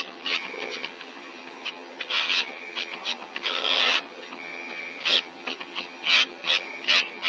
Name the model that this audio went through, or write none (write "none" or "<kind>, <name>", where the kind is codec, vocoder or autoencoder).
vocoder, HiFi-GAN